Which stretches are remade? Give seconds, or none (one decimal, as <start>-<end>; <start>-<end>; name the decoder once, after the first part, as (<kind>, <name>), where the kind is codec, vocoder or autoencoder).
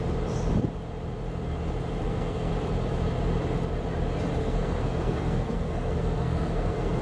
2.0-2.5 (codec, SNAC); 4.4-7.0